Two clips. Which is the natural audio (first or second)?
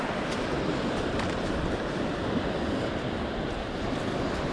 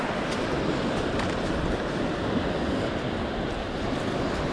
second